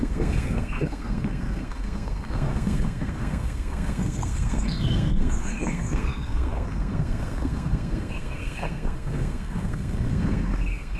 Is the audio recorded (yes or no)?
no